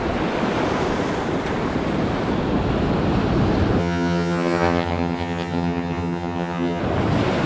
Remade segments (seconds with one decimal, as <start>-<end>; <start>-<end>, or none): 3.8-6.8